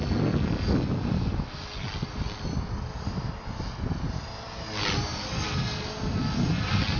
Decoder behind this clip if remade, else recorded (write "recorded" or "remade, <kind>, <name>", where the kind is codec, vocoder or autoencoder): recorded